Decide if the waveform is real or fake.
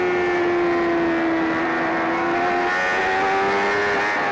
real